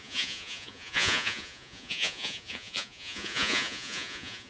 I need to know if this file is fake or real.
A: fake